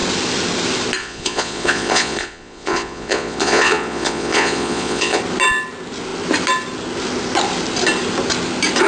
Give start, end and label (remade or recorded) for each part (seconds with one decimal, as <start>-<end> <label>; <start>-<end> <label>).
0.0-1.0 recorded; 1.0-5.2 remade; 5.2-8.9 recorded